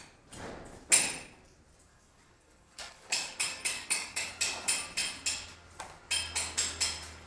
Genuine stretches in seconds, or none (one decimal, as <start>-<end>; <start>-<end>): 0.0-1.9; 4.3-7.3

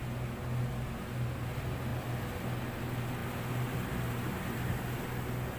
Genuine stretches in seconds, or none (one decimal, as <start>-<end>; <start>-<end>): 0.0-5.6

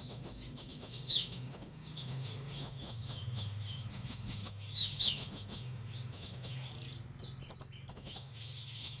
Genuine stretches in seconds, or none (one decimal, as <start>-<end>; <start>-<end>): 6.7-7.9

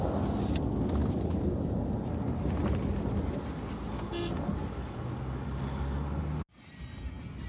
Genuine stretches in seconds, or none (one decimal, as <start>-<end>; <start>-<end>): 0.0-4.8; 6.2-7.5

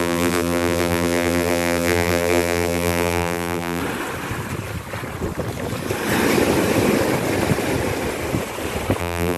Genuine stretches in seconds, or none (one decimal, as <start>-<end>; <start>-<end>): 3.8-9.0

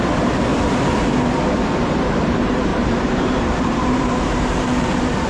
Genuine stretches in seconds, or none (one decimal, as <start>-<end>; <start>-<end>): 0.5-1.9

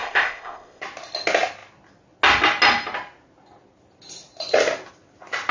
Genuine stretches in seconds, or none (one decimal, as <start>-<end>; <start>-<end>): 0.8-5.5

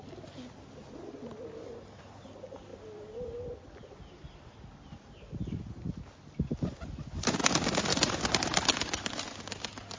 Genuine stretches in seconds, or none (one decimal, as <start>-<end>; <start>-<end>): 0.0-10.0